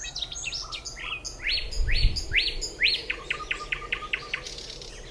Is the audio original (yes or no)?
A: yes